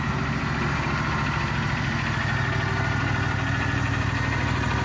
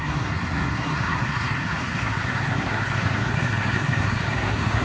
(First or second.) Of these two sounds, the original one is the first